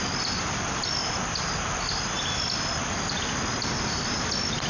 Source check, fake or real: real